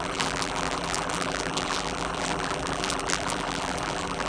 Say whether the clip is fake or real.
fake